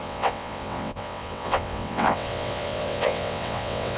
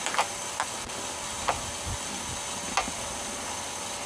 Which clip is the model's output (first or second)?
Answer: first